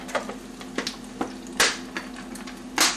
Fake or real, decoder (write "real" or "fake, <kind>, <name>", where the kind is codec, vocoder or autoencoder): real